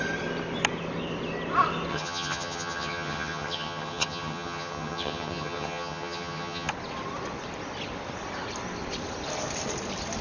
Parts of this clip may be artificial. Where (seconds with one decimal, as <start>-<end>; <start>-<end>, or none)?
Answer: 1.9-6.7